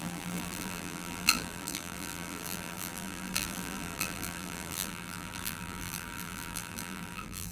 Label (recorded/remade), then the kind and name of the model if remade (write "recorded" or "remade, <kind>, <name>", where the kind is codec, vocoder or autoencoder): remade, vocoder, BigVGAN v2